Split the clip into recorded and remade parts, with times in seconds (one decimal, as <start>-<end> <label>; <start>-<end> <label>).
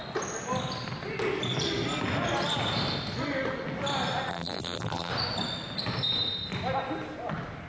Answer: 0.0-4.3 recorded; 4.3-5.1 remade; 5.1-7.7 recorded